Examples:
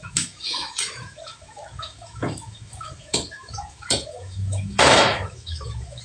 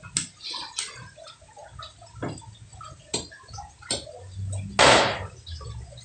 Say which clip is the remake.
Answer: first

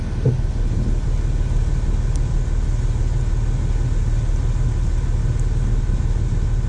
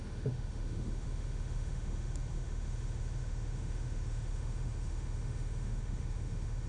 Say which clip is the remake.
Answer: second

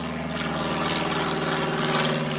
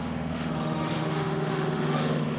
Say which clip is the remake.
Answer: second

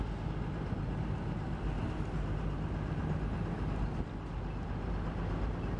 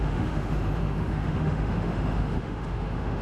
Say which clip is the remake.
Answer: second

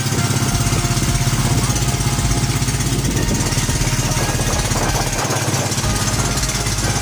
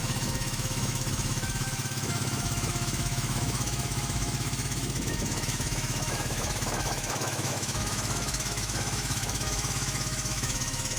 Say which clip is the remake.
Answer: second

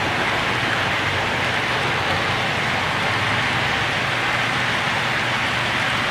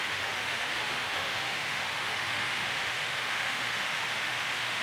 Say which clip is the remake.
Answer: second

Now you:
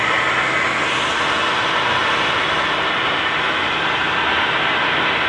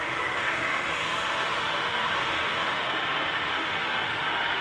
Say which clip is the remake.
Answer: second